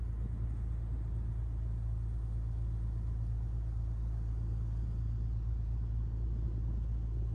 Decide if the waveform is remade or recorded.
recorded